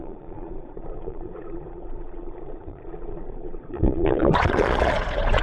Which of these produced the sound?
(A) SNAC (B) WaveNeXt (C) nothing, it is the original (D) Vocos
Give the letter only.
D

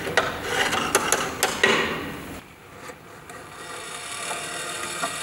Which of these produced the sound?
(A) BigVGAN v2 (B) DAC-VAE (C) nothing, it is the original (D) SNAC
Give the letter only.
C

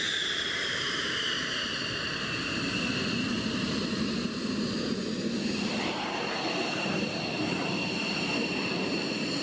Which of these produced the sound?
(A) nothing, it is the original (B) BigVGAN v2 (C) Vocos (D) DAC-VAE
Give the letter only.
B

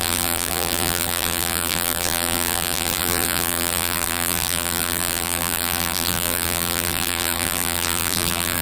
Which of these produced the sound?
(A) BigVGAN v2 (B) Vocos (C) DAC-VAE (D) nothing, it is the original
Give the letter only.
A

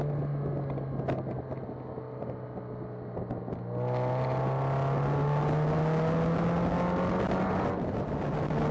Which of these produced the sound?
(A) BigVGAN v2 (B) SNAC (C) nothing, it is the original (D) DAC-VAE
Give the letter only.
C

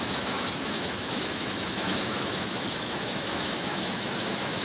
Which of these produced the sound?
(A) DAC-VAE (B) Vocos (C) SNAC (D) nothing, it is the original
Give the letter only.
A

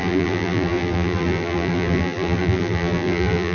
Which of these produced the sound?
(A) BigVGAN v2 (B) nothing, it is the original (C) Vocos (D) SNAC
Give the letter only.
A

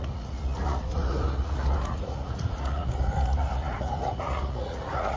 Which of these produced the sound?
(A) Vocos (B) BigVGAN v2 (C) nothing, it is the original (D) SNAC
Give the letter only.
A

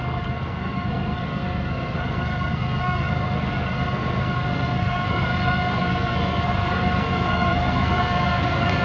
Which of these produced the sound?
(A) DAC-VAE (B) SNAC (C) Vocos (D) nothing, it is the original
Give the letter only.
B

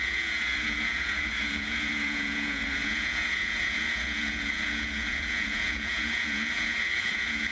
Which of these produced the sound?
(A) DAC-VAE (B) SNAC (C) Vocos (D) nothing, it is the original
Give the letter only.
C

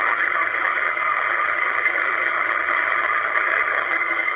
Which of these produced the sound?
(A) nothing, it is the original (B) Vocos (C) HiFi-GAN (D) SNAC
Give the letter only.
C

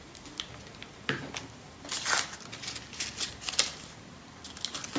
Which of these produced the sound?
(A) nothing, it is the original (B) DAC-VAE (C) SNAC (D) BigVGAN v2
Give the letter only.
A